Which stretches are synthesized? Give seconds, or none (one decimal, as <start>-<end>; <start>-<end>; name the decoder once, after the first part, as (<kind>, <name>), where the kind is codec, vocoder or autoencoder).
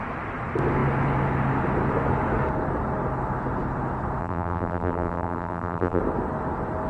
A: 4.2-6.0 (vocoder, BigVGAN v2)